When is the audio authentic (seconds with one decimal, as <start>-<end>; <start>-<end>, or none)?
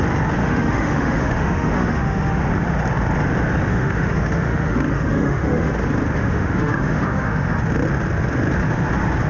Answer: 0.0-0.4; 2.4-3.7; 5.7-6.2; 7.6-9.3